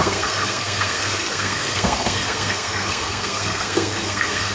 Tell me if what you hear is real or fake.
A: fake